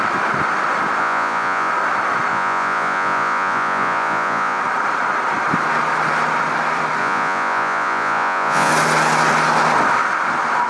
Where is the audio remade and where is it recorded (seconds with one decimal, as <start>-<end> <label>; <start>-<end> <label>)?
0.0-1.0 recorded; 1.0-1.7 remade; 1.7-2.3 recorded; 2.3-4.6 remade; 4.6-7.0 recorded; 7.0-8.7 remade; 8.7-10.7 recorded

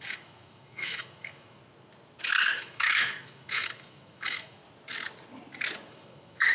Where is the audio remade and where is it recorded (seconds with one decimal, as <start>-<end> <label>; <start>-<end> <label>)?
0.0-1.6 remade; 1.6-2.6 recorded; 2.6-4.6 remade; 4.6-5.9 recorded; 5.9-6.5 remade

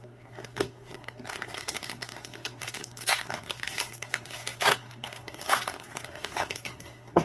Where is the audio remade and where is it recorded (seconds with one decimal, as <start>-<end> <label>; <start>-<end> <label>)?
0.0-7.2 remade